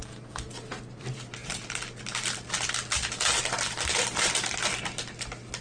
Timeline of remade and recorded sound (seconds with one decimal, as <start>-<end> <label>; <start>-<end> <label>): 0.0-5.6 recorded